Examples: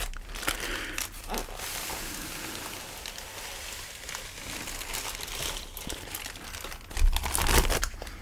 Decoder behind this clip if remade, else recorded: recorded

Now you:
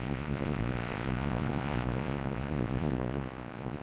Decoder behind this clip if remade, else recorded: remade, vocoder, Vocos